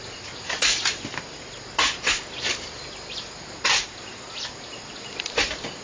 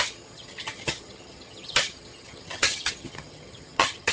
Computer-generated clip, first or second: second